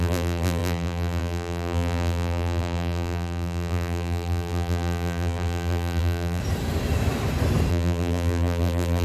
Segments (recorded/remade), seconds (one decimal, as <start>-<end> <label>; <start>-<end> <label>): 0.0-6.4 remade; 6.4-7.7 recorded; 7.7-9.0 remade